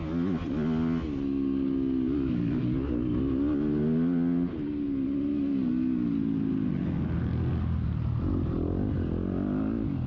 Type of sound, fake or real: real